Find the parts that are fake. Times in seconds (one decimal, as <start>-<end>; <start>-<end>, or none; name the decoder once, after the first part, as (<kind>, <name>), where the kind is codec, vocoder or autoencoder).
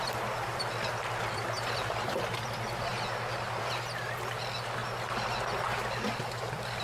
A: none